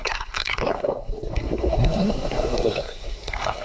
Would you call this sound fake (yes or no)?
yes